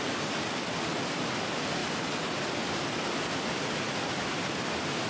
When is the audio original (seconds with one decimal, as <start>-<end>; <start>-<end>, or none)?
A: 0.0-5.1